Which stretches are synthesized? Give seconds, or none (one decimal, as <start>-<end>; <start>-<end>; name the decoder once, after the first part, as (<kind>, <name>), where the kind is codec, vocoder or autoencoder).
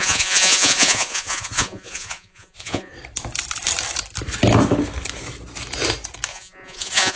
0.0-2.9 (vocoder, Vocos); 6.3-7.2